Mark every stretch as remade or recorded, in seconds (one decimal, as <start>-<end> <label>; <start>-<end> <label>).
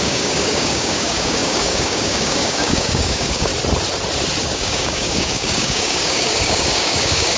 0.0-3.5 remade; 3.5-4.4 recorded; 4.4-7.4 remade